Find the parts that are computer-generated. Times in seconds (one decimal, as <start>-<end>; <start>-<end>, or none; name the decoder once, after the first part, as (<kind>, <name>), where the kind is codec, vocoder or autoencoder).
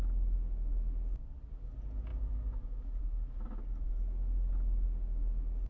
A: none